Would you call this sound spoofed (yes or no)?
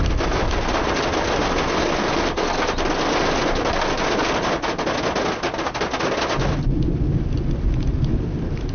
no